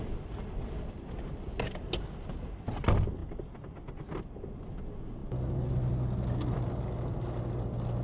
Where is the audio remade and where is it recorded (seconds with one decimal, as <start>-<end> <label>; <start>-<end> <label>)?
0.0-8.0 recorded